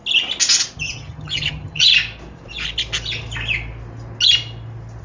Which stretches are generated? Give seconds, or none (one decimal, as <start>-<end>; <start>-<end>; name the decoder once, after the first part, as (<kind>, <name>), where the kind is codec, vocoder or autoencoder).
0.8-1.9 (vocoder, HiFi-GAN)